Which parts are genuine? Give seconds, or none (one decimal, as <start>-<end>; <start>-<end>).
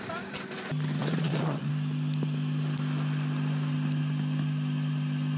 0.0-1.0; 1.7-5.4